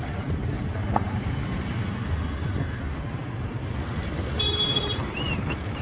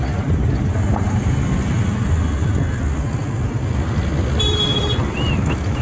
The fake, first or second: first